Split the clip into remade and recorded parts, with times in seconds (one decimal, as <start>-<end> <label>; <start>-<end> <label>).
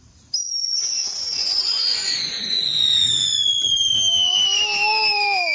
0.0-0.6 recorded; 0.6-3.9 remade; 3.9-5.5 recorded